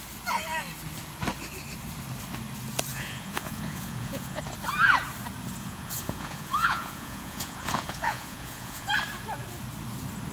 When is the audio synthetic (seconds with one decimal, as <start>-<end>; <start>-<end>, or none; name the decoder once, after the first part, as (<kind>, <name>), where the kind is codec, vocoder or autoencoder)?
2.9-4.4 (vocoder, Vocos); 5.6-8.9